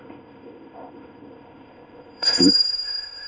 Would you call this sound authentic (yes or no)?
no